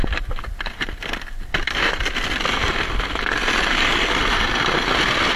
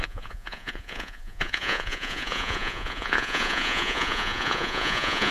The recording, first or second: first